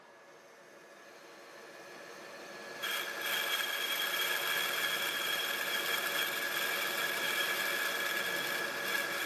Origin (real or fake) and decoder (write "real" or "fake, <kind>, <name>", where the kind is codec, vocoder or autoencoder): real